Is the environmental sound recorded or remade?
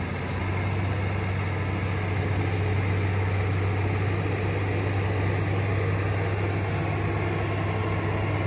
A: recorded